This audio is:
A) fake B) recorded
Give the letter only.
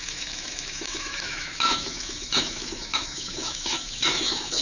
A